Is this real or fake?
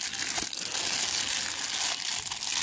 real